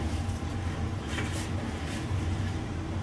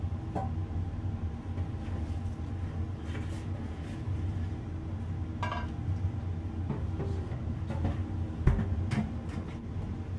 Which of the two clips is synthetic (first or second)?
first